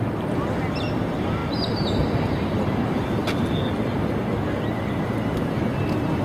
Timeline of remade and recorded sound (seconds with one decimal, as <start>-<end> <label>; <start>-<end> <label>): 0.0-6.2 recorded